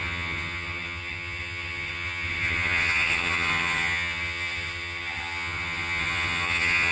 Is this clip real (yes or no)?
no